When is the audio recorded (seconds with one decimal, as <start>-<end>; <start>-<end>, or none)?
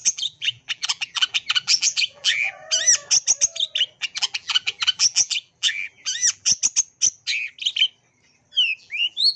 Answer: 2.6-4.0; 6.6-8.8